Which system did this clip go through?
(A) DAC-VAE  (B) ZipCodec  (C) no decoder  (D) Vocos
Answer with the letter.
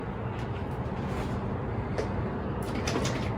C